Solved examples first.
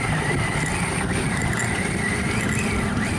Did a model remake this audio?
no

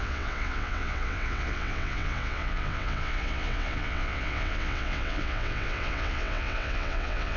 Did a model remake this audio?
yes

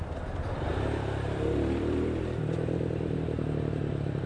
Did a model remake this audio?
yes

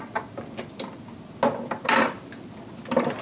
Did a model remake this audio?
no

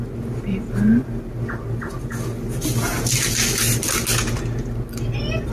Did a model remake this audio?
no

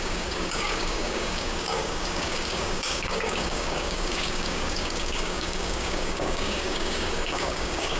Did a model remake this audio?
yes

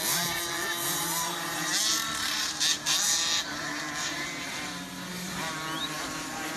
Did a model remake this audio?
yes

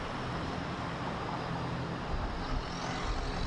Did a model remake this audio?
no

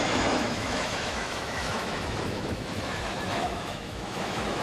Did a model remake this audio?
yes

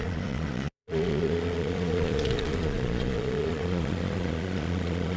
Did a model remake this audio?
yes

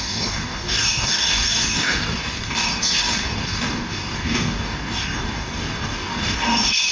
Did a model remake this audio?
yes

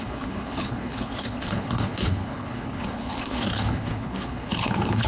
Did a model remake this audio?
yes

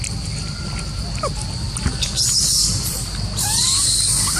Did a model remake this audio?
yes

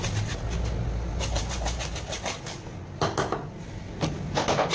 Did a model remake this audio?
no